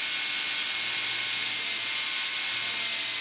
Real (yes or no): yes